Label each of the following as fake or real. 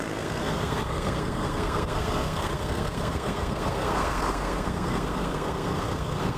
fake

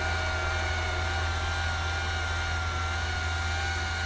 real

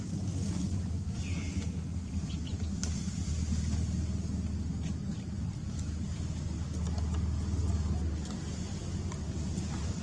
real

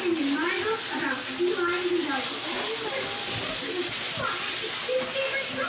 real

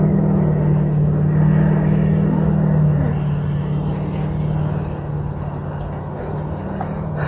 real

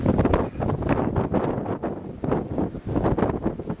real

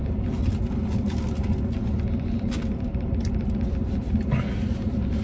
real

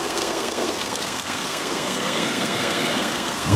fake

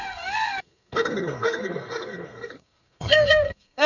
fake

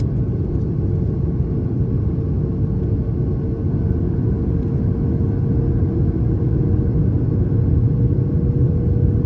real